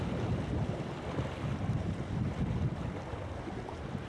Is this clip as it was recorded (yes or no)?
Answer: yes